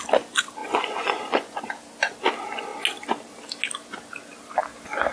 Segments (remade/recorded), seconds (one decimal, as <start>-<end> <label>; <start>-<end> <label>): 0.0-0.6 recorded; 0.6-1.6 remade; 1.6-5.1 recorded